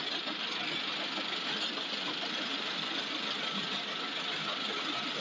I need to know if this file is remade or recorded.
remade